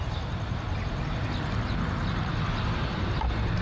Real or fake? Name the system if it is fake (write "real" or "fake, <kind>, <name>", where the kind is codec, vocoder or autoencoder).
real